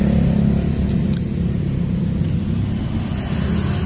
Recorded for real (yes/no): yes